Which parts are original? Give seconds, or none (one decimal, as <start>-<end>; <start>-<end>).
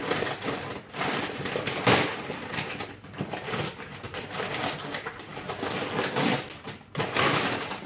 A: 0.0-7.9